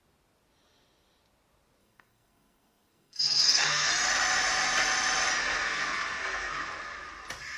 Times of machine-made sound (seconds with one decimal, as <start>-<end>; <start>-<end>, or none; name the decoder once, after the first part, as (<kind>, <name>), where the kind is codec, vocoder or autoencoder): 1.8-3.9 (codec, SNAC); 5.4-6.8